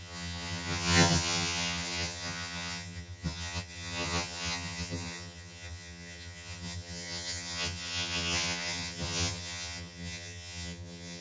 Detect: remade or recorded remade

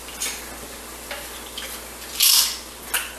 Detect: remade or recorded recorded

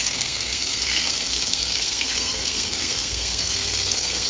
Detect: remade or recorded remade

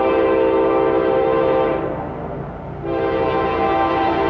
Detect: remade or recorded recorded